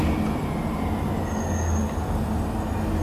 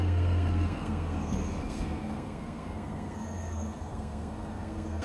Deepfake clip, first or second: second